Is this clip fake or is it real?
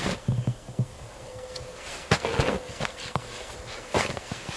fake